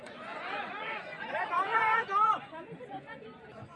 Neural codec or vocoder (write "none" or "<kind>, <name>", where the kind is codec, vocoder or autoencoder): vocoder, Vocos